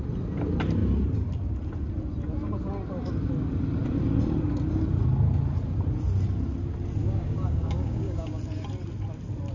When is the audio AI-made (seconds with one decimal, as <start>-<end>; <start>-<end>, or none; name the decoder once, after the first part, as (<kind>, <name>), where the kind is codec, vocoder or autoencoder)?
7.0-8.4 (codec, DAC)